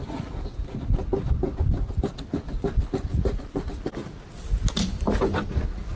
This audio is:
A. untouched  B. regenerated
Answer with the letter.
A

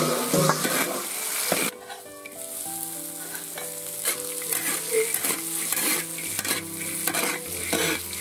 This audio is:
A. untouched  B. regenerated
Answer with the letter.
A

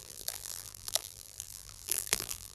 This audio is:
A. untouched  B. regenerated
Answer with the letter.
B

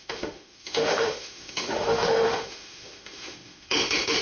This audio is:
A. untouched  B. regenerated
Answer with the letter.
B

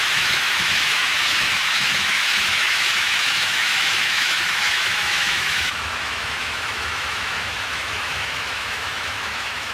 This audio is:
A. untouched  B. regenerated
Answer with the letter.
B